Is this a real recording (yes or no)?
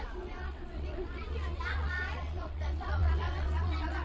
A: no